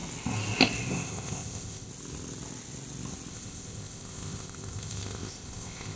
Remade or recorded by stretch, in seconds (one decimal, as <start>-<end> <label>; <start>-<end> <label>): 0.0-0.9 recorded; 0.9-1.9 remade; 1.9-3.3 recorded; 3.3-6.0 remade